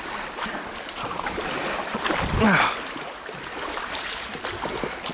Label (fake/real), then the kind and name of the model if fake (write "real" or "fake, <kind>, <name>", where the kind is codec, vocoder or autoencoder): fake, vocoder, BigVGAN v2